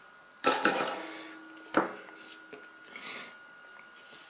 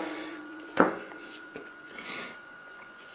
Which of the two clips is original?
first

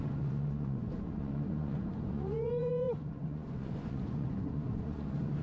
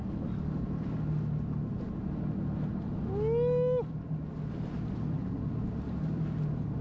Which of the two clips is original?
second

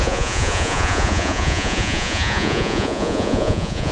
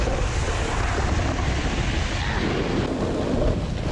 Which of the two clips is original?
second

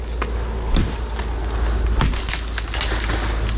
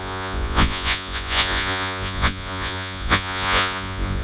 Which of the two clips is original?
first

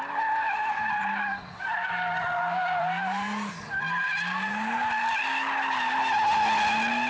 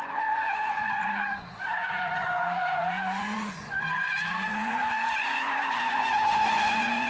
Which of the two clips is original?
first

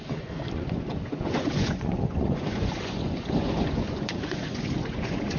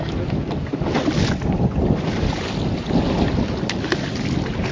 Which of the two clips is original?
second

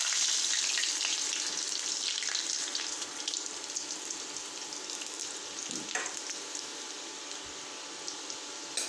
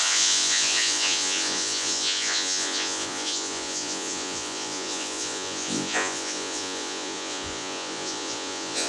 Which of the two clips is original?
first